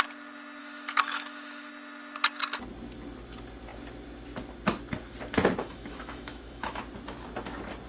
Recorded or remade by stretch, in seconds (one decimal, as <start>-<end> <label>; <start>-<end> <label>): 0.0-0.6 recorded; 0.6-1.7 remade; 1.7-5.6 recorded; 5.6-6.8 remade; 6.8-7.9 recorded